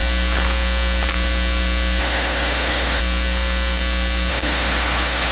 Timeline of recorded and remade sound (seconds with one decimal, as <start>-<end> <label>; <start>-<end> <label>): 0.0-2.0 recorded; 2.0-3.0 remade; 3.0-4.3 recorded; 4.3-5.3 remade